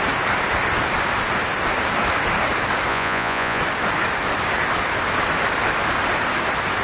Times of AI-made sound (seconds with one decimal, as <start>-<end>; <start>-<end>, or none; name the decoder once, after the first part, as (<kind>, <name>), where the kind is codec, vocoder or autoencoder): 2.9-3.6 (vocoder, Vocos)